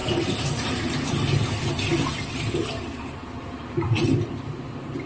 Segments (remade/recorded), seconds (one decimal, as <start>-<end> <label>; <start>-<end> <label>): 0.0-1.9 recorded; 1.9-5.1 remade